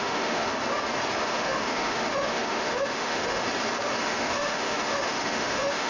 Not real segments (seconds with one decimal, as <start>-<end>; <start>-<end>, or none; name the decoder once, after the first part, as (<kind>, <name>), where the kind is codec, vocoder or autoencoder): 0.0-0.5 (autoencoder, DAC-VAE); 1.2-3.4; 4.0-5.9